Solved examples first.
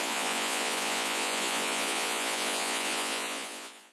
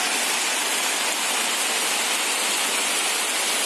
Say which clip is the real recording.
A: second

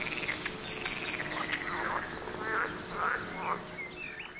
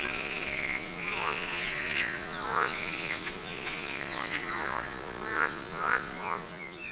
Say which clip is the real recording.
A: first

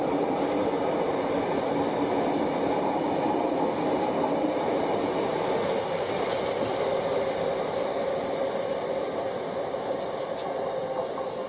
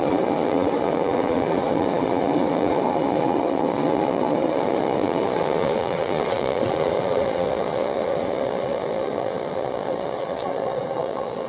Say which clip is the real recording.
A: first